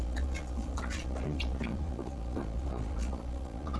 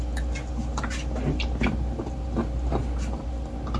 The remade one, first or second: first